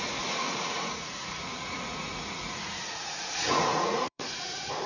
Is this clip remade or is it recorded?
remade